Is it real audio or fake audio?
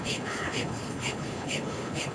fake